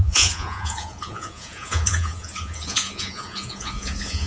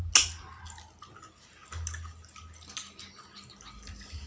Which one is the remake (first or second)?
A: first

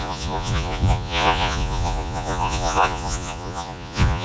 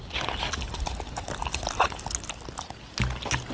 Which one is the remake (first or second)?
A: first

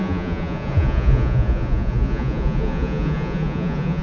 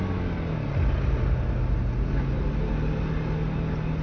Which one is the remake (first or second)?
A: first